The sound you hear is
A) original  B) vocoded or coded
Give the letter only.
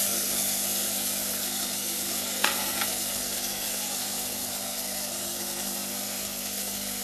B